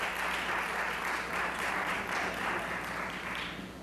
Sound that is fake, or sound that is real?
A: real